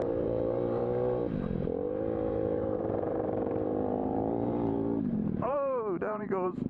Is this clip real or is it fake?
fake